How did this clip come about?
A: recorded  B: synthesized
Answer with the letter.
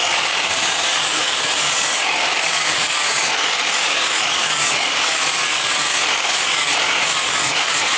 B